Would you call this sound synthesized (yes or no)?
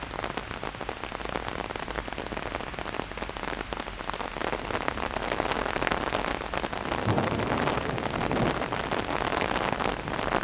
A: no